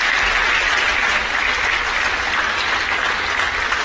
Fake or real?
real